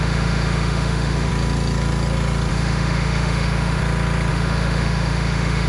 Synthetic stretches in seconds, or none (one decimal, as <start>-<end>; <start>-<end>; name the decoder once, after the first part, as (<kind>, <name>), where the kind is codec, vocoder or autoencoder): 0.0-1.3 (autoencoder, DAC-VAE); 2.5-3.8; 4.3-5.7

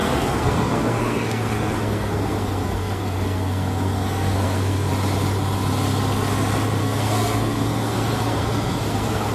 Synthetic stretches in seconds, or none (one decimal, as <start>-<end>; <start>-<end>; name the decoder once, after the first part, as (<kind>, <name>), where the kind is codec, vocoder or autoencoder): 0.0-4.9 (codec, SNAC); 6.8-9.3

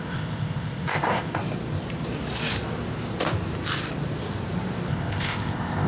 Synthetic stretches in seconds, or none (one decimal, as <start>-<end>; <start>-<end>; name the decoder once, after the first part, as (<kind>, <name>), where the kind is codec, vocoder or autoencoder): 0.0-1.4 (codec, ZipCodec); 4.9-5.9